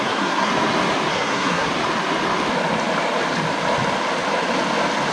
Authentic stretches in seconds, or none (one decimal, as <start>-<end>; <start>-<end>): 0.5-1.1; 1.7-5.1